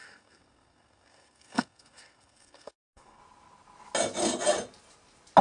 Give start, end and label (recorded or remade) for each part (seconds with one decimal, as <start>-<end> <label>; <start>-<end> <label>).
0.0-3.2 remade; 3.2-5.4 recorded